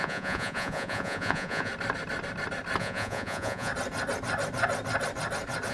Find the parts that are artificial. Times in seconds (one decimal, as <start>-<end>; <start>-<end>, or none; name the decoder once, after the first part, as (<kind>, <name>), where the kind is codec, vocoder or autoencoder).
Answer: 0.0-1.7 (vocoder, Vocos); 2.8-3.7